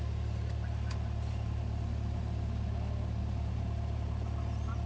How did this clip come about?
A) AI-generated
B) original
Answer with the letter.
B